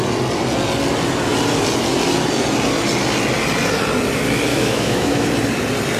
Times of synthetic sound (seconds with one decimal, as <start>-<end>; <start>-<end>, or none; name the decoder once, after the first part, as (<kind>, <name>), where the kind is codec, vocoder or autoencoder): 4.5-5.3 (autoencoder, DAC-VAE)

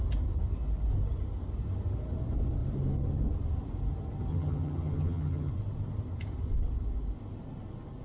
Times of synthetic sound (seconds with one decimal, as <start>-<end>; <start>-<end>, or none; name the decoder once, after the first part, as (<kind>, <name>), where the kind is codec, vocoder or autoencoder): 4.3-5.5 (vocoder, HiFi-GAN)